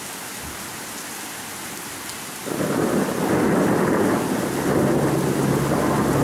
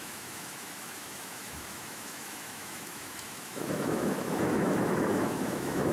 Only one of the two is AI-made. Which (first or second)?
second